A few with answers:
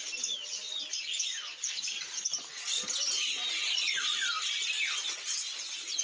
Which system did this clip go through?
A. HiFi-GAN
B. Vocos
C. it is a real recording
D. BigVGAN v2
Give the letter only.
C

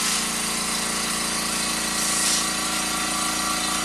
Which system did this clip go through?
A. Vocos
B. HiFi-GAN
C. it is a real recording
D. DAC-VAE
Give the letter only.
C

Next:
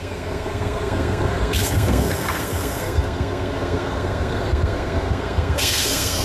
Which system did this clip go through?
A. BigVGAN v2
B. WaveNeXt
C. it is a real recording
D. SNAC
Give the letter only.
D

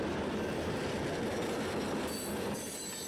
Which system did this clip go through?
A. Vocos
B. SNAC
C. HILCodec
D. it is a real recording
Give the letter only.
D